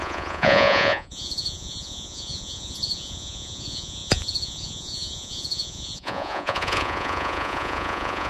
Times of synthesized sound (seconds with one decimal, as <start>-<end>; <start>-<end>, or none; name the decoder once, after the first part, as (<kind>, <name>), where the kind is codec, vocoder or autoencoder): 0.0-8.3 (vocoder, Vocos)